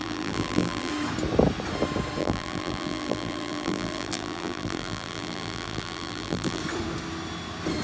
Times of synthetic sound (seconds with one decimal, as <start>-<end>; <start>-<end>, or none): 0.0-0.9; 2.2-6.6